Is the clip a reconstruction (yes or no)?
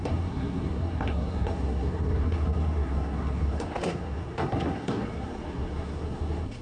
yes